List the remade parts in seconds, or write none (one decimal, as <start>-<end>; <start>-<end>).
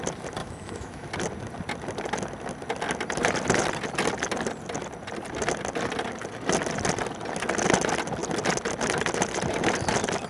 0.4-1.1